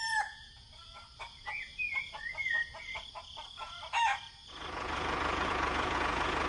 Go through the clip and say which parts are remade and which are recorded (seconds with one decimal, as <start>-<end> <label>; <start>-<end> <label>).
0.0-0.8 remade; 0.8-1.5 recorded; 1.5-6.5 remade

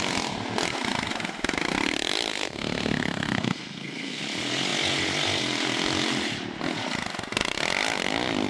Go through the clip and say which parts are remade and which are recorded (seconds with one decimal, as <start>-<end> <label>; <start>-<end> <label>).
0.0-2.3 recorded; 2.3-4.2 remade; 4.2-8.5 recorded

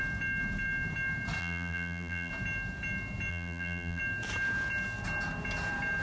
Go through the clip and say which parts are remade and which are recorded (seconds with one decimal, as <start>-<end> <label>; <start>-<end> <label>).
0.0-1.4 recorded; 1.4-2.3 remade; 2.3-3.3 recorded; 3.3-4.0 remade; 4.0-6.0 recorded

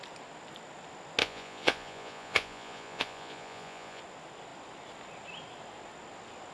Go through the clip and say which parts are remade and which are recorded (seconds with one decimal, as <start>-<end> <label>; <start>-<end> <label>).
0.0-1.2 recorded; 1.2-4.0 remade; 4.0-6.5 recorded

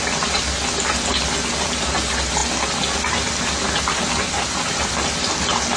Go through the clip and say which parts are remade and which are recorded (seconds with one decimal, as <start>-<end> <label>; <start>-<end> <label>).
0.0-5.8 recorded

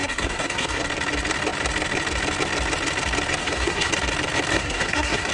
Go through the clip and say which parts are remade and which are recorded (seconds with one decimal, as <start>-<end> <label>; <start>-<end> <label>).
0.0-0.8 remade; 0.8-3.4 recorded; 3.4-3.9 remade; 3.9-4.5 recorded; 4.5-5.3 remade